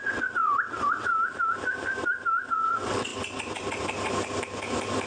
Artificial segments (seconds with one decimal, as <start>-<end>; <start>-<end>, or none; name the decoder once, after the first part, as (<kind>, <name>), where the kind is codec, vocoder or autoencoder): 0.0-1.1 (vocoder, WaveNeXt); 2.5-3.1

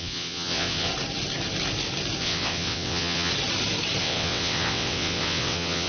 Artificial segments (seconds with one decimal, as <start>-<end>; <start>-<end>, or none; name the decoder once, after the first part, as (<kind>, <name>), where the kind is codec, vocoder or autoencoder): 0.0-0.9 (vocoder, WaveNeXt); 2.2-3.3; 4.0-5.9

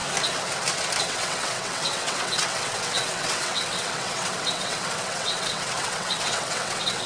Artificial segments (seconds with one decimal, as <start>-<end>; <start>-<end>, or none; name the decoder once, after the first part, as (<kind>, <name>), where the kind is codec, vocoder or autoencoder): 1.0-7.1 (vocoder, WaveNeXt)

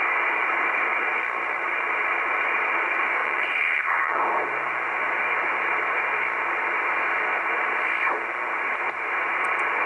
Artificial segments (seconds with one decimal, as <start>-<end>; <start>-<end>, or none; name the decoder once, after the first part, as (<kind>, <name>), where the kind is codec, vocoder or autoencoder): 3.2-4.2 (vocoder, WaveNeXt)

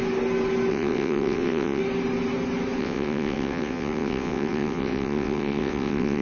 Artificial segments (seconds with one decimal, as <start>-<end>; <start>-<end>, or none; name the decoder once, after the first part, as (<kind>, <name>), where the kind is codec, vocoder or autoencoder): 0.7-1.8 (vocoder, WaveNeXt); 2.8-6.2